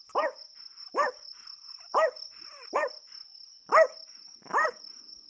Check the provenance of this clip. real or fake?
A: real